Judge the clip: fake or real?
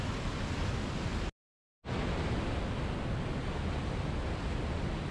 real